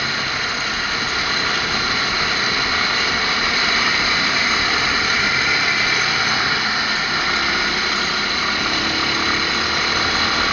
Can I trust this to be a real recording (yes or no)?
yes